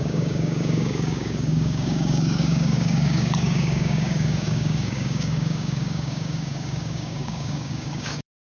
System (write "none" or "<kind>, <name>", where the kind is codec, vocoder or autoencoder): codec, DAC